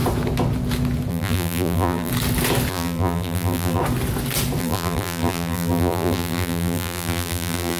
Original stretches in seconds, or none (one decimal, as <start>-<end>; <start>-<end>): 0.0-1.1; 2.1-2.7; 3.8-4.6

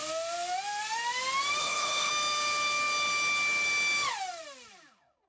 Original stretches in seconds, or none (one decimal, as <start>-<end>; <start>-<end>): 0.0-1.6; 2.1-5.3

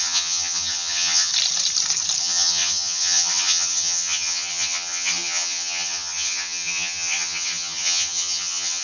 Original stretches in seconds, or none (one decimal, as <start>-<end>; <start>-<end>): 1.3-2.2

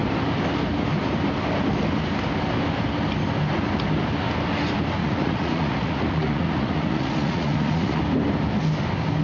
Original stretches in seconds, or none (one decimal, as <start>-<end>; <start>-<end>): 0.0-5.0; 8.0-9.2

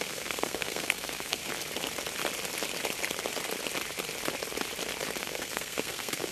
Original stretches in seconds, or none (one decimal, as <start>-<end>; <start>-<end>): 1.4-5.2